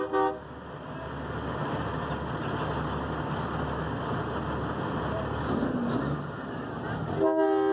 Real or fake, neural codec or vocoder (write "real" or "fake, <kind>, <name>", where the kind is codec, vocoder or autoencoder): real